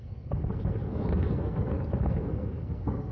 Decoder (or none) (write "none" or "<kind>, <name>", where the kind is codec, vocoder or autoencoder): codec, SNAC